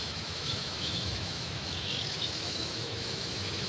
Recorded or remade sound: remade